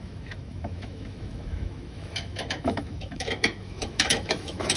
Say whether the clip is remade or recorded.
remade